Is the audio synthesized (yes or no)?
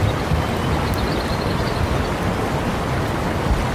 no